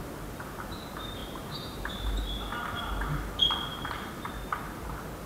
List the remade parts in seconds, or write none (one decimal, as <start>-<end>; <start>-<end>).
0.0-2.5